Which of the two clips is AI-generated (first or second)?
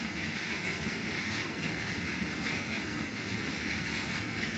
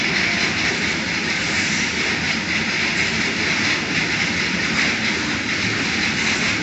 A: first